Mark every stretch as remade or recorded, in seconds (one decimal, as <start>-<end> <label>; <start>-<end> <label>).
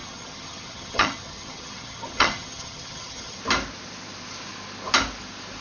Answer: 0.0-3.4 remade; 3.4-5.6 recorded